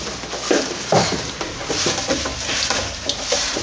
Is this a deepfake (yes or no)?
no